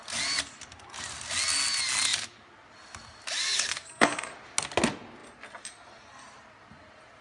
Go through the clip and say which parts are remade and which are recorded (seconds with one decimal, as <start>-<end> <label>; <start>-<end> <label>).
0.0-3.7 recorded; 3.7-4.3 remade; 4.3-7.2 recorded